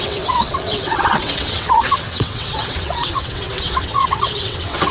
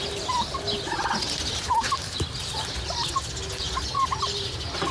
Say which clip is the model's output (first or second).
first